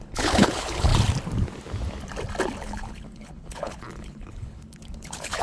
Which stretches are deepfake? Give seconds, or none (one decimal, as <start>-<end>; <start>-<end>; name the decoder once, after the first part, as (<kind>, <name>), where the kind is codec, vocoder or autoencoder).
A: 0.0-0.9 (codec, HILCodec); 2.6-5.4